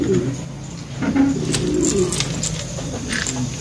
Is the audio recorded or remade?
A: recorded